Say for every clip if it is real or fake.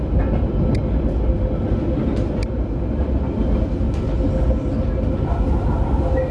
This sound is real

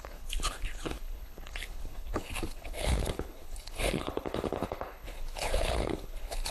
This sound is fake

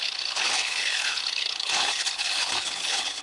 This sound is fake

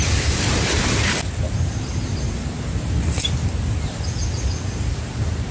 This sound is real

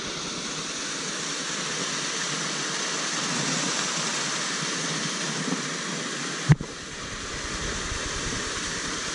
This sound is real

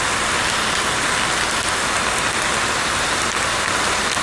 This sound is real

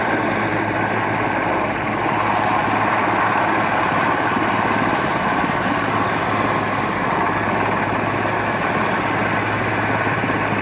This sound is real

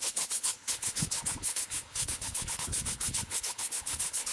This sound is fake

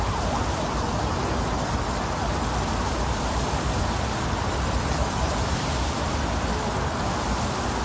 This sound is real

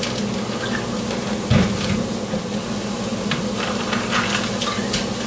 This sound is real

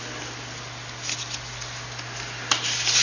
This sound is real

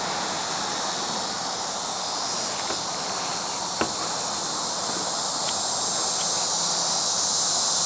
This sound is real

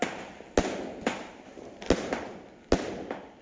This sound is real